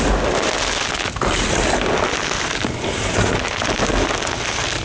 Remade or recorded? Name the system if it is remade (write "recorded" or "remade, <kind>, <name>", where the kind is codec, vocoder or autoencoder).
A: recorded